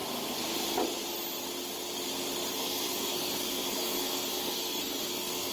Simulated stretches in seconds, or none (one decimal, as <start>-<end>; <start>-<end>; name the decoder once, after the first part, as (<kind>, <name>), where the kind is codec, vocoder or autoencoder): 2.5-5.5 (codec, SNAC)